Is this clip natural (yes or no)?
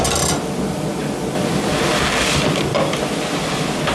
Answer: yes